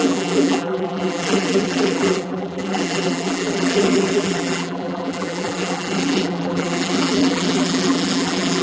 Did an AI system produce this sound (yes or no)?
yes